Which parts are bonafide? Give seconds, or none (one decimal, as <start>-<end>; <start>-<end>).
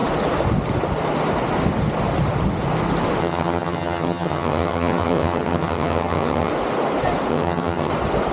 0.0-3.2; 6.5-7.3; 7.9-8.3